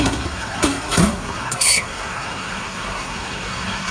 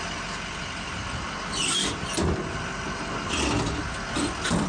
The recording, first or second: second